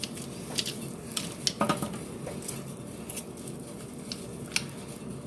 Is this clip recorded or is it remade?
recorded